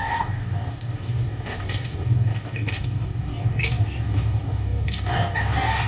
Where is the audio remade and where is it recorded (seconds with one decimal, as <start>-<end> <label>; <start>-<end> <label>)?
0.0-5.9 remade